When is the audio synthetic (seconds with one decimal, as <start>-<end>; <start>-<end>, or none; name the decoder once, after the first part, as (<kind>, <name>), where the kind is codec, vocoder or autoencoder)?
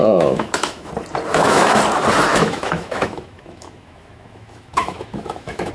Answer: 0.0-0.9 (autoencoder, DAC-VAE); 1.3-1.8; 2.3-5.7